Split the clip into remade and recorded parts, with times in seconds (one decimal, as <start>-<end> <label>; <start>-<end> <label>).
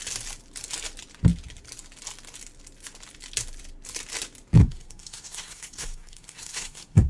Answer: 0.0-4.6 recorded; 4.6-7.1 remade